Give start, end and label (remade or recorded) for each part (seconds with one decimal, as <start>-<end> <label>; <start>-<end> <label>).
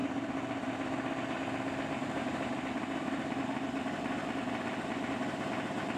0.0-2.0 recorded; 2.0-3.1 remade; 3.1-6.0 recorded